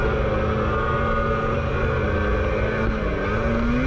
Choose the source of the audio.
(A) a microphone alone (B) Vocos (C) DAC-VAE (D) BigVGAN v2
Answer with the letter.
A